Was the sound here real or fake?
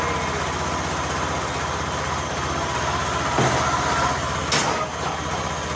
real